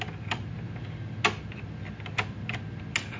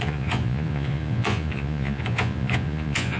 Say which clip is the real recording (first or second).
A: first